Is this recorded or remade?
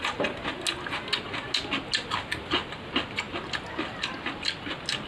recorded